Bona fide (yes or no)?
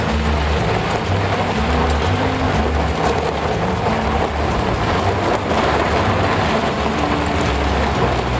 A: yes